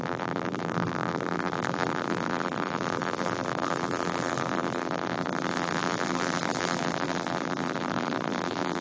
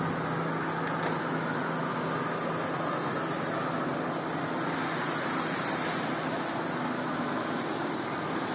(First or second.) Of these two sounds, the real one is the second